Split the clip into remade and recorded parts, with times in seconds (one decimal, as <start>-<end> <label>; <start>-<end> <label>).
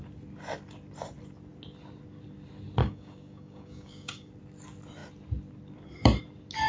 0.0-2.8 recorded; 2.8-4.3 remade; 4.3-6.7 recorded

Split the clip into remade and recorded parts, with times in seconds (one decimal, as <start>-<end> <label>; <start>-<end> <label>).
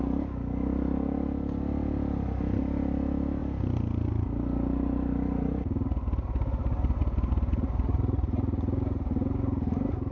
0.0-10.1 recorded